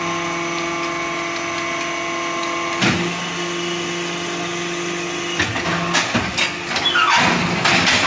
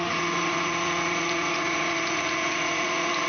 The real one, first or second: first